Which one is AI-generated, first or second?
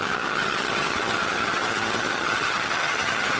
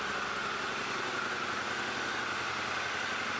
first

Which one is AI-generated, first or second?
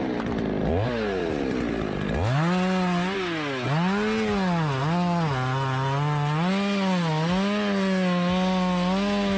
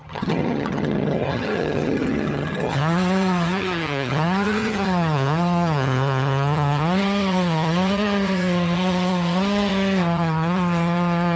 second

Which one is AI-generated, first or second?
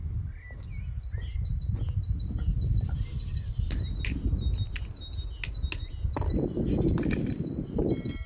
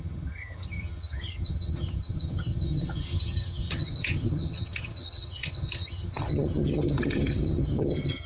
second